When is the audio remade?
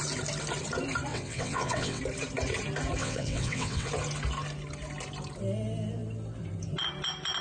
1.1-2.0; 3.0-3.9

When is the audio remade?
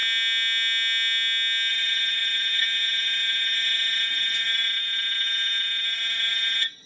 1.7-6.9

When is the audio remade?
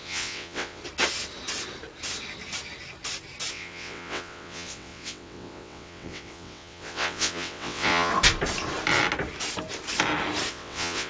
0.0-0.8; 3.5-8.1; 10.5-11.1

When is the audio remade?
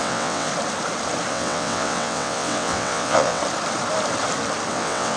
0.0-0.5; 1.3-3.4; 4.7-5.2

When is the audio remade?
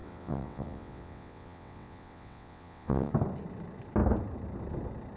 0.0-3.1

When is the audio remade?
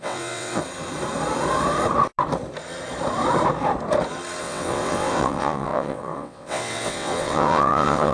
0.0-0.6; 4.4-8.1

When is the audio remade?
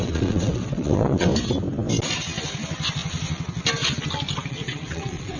0.0-1.3; 4.5-5.4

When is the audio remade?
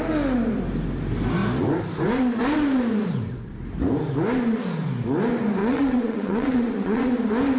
5.6-7.1